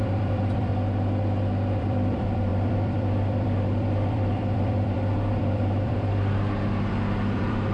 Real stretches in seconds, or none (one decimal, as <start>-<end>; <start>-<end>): 0.7-1.8